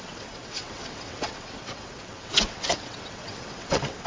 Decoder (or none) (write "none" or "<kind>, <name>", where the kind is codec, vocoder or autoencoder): vocoder, WaveNeXt